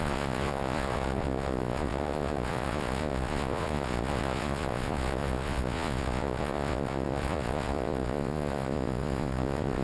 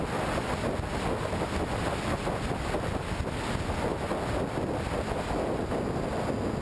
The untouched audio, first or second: second